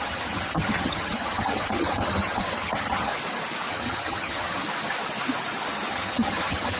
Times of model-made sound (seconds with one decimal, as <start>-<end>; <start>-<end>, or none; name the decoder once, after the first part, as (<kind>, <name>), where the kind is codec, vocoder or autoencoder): 0.0-3.1 (vocoder, HiFi-GAN); 3.7-4.6; 5.9-6.8